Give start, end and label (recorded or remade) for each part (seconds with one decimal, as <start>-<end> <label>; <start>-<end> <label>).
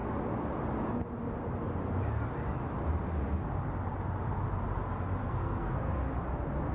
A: 0.0-5.2 recorded; 5.2-6.1 remade; 6.1-6.7 recorded